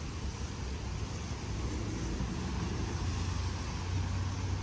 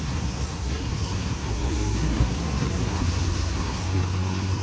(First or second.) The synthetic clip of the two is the second